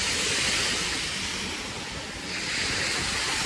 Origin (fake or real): real